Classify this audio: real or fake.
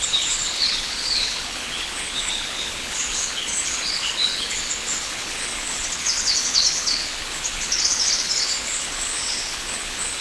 fake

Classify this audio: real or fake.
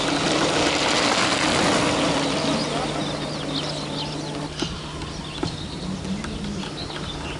real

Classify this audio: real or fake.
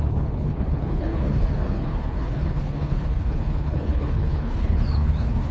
fake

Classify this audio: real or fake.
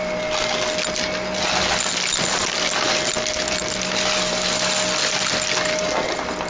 real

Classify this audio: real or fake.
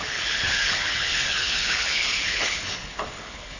fake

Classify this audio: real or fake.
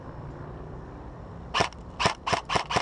real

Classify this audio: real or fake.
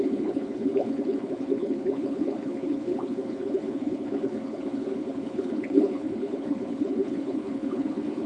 fake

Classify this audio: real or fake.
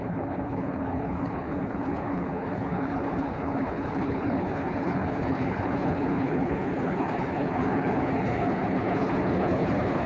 fake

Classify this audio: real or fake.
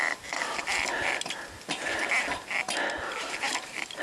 real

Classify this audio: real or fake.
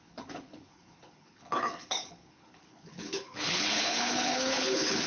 fake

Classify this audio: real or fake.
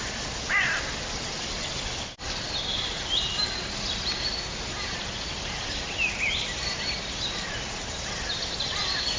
real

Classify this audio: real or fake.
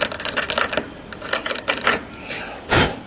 real